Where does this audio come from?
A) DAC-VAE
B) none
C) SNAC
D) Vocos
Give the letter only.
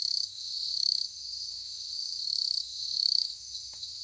A